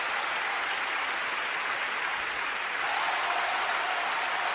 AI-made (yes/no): no